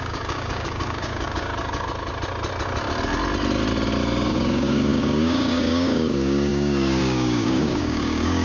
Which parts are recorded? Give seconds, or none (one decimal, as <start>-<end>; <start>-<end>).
1.5-4.3